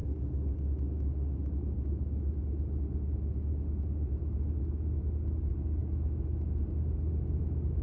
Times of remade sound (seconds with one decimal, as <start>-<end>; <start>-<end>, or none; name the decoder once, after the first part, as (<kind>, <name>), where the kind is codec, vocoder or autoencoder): 5.8-6.6 (autoencoder, DAC-VAE)